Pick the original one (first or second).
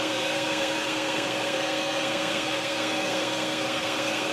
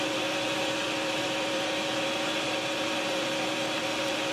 second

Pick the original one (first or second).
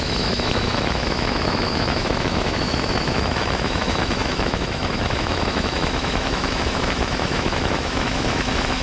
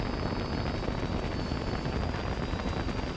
second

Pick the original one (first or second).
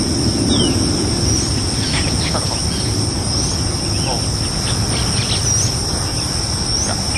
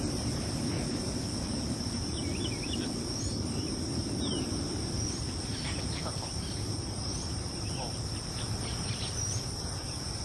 first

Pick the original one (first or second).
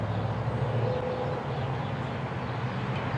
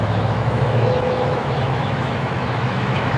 first